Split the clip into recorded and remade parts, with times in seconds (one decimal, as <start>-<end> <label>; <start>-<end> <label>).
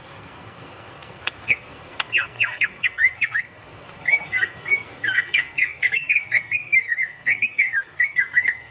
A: 0.0-8.7 remade